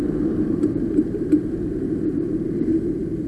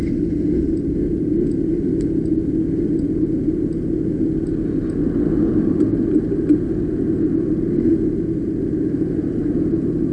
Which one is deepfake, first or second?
first